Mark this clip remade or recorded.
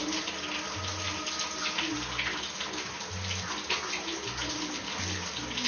recorded